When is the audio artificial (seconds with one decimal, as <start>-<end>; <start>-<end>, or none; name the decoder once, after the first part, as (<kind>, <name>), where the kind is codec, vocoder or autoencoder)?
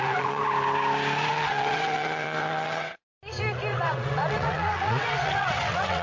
0.0-0.4 (vocoder, WaveNeXt); 1.3-3.0; 3.7-6.0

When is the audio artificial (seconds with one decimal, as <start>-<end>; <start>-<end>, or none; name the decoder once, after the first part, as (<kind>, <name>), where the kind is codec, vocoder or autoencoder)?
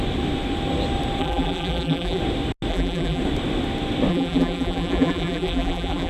1.2-2.2 (vocoder, BigVGAN v2); 2.7-3.2; 4.1-6.1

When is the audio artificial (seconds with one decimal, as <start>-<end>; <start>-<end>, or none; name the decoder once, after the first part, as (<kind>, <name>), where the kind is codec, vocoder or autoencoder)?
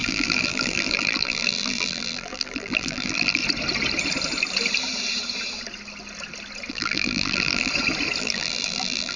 0.0-3.4 (vocoder, BigVGAN v2); 6.7-7.7; 8.2-9.2